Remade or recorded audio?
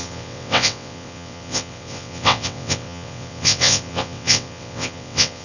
remade